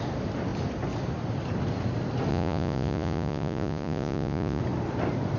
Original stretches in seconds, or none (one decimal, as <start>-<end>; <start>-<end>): 0.0-2.3; 4.6-5.4